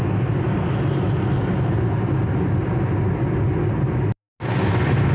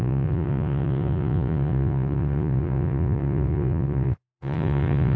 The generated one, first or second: second